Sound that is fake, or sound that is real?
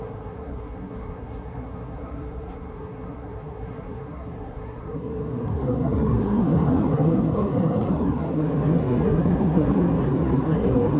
fake